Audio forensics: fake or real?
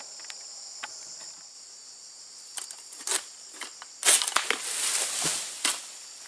real